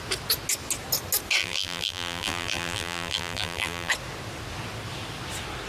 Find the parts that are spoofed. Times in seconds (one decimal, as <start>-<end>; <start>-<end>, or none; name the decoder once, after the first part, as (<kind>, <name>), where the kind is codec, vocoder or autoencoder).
1.4-3.9 (vocoder, BigVGAN v2)